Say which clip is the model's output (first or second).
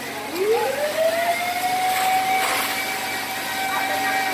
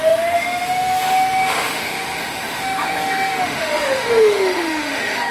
second